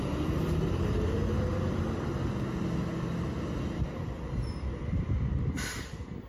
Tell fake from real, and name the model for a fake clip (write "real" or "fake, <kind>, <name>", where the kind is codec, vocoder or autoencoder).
real